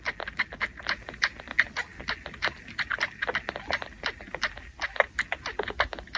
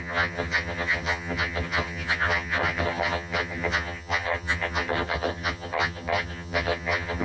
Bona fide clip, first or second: first